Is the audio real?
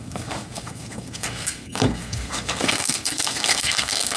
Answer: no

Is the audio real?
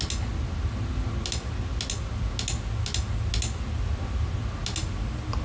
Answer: yes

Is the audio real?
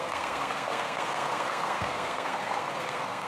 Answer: no